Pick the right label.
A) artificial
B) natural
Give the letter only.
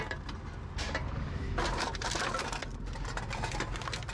B